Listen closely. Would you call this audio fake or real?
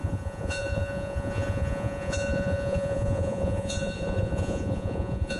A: fake